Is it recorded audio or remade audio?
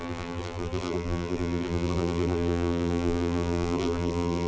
remade